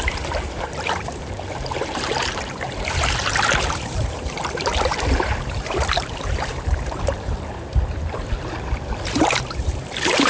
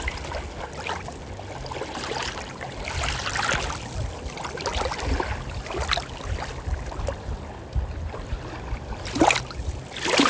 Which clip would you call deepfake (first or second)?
first